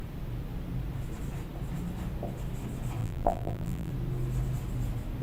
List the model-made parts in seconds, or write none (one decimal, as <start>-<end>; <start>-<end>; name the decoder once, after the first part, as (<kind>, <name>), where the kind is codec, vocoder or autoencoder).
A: 3.0-3.9 (vocoder, BigVGAN v2)